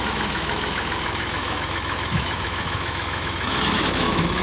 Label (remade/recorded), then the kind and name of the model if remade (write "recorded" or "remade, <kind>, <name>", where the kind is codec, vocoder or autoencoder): remade, autoencoder, DAC-VAE